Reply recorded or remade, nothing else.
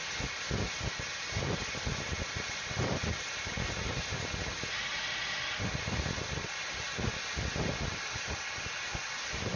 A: recorded